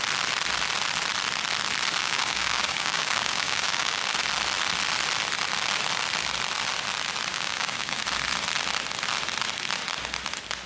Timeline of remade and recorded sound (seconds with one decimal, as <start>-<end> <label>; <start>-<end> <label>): 0.0-2.0 recorded; 2.0-4.0 remade; 4.0-7.3 recorded; 7.3-8.0 remade; 8.0-10.7 recorded